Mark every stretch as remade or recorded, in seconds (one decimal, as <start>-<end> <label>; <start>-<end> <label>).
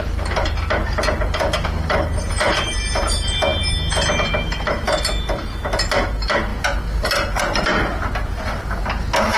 0.0-9.4 recorded